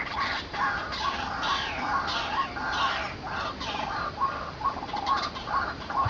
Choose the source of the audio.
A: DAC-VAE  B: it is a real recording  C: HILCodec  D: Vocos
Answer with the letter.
B